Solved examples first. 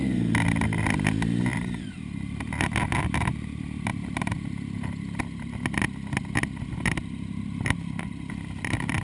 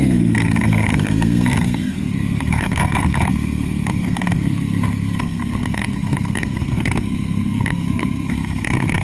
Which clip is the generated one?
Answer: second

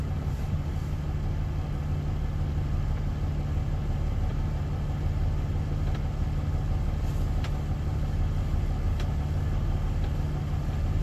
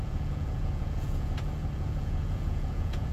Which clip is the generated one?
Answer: second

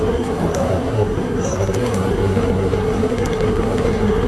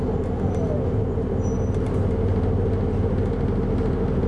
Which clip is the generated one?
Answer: first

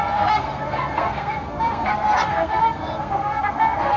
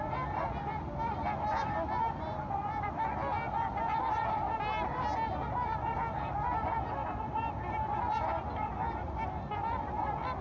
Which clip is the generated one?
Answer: first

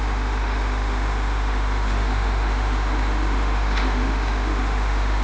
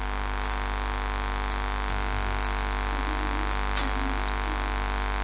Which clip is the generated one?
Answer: first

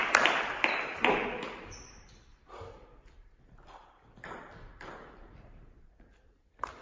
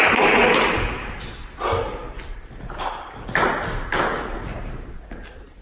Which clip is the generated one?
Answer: first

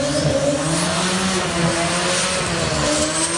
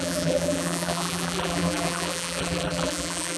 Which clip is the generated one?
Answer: second